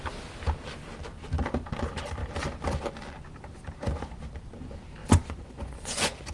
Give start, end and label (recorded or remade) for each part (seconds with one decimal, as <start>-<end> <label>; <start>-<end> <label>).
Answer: 0.0-5.0 recorded; 5.0-6.3 remade